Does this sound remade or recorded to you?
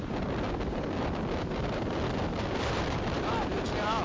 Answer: remade